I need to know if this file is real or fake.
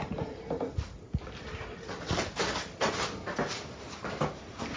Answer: real